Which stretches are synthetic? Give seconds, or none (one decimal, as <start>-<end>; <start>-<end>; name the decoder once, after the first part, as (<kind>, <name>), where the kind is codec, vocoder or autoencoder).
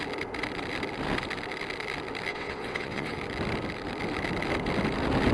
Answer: 2.3-3.2 (vocoder, WaveNeXt)